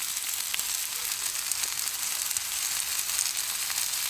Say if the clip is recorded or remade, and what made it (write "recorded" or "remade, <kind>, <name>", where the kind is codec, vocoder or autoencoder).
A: recorded